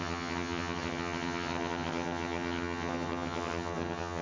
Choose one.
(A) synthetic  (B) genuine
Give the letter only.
A